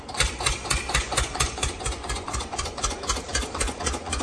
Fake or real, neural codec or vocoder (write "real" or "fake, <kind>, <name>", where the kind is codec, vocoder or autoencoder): fake, vocoder, Vocos